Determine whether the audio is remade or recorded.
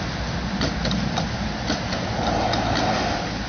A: recorded